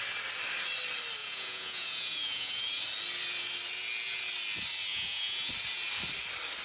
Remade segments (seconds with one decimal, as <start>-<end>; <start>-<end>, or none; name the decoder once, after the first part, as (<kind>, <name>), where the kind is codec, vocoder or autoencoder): 1.2-2.8 (vocoder, Vocos); 4.9-5.5